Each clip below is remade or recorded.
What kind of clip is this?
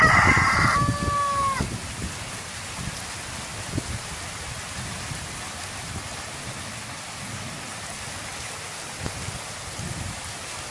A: recorded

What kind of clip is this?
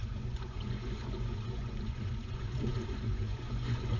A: remade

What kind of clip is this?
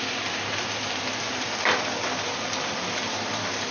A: recorded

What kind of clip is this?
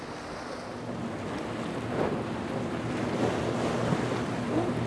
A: recorded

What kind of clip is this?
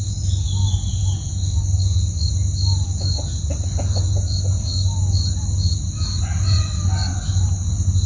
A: recorded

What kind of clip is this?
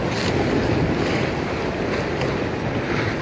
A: recorded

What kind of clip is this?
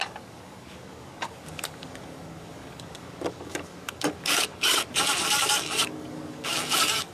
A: remade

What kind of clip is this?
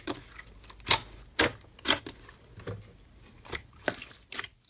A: recorded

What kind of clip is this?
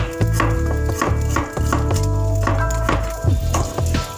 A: recorded